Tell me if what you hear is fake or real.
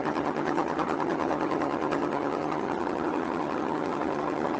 fake